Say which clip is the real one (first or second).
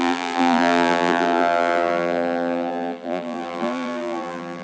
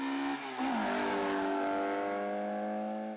second